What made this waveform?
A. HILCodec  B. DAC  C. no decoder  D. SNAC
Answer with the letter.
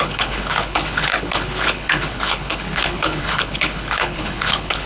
A